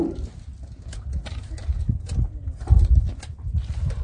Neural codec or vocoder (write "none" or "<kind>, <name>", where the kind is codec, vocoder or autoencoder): none